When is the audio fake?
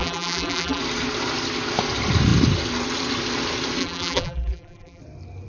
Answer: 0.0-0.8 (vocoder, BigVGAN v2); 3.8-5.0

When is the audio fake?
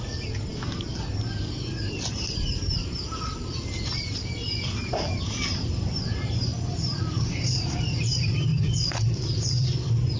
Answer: 0.0-10.2 (vocoder, BigVGAN v2)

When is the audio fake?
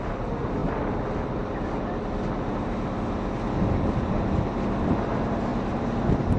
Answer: none